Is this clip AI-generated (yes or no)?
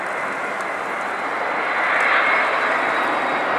no